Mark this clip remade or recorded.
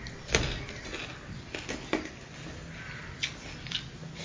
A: recorded